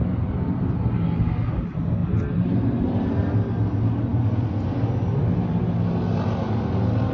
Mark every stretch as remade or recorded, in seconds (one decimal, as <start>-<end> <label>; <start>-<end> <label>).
0.0-2.0 recorded; 2.0-3.1 remade; 3.1-7.1 recorded